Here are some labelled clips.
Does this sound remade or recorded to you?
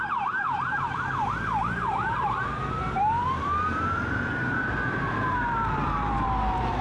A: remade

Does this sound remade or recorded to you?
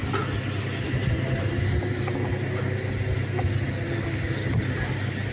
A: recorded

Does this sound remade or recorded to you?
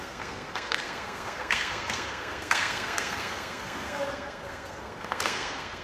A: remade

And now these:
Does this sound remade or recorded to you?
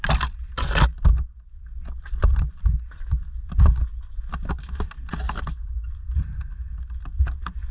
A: recorded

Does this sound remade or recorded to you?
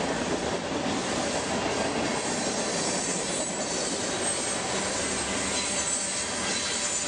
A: recorded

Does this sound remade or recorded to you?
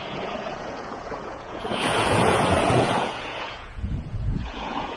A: remade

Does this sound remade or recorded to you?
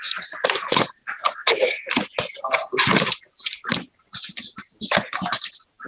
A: recorded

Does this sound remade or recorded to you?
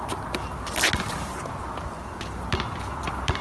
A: recorded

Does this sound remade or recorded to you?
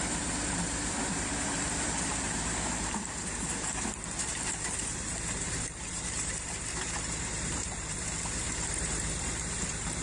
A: remade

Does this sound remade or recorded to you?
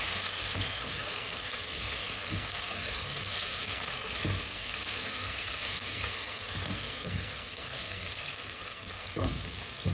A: remade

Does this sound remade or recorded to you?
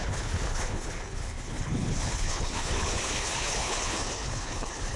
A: remade